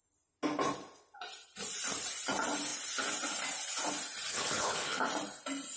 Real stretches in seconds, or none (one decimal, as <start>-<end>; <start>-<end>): 0.0-4.3; 5.0-5.8

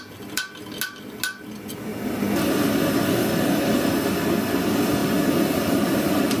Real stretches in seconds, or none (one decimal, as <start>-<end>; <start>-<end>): 0.0-5.0

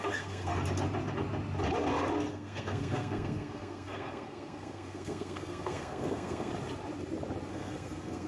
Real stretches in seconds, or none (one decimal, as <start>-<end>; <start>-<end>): 0.5-2.3; 6.5-7.5

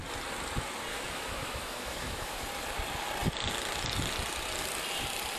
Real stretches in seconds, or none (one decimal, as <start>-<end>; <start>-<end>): 0.0-0.9; 2.4-5.4

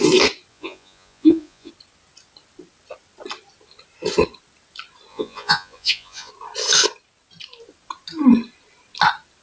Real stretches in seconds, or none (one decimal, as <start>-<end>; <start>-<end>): 0.0-0.5; 1.7-5.1; 6.3-9.4